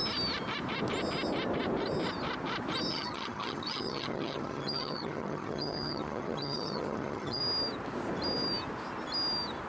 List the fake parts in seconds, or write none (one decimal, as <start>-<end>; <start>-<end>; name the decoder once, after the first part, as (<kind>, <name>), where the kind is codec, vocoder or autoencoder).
2.9-7.4 (vocoder, HiFi-GAN)